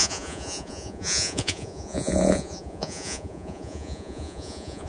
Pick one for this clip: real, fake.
fake